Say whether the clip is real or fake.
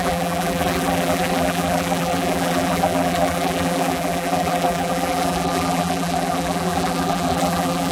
fake